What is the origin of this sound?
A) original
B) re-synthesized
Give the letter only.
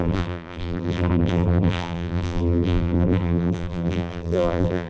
B